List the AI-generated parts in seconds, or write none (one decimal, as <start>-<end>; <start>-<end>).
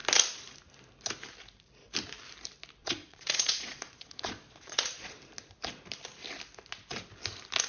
2.8-5.1